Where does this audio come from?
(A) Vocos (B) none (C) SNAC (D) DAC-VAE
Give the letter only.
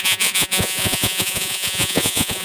A